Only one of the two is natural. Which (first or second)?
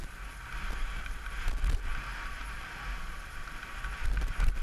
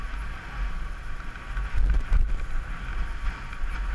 second